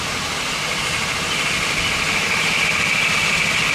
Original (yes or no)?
yes